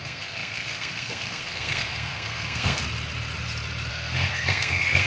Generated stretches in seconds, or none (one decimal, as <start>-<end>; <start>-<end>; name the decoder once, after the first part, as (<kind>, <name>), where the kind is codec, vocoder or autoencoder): 0.0-2.8 (codec, SNAC); 3.9-5.1